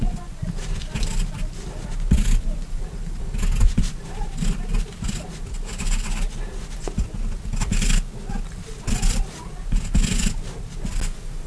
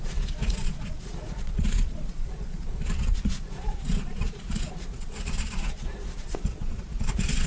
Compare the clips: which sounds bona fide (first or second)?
first